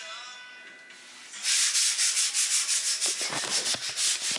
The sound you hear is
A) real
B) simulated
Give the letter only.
A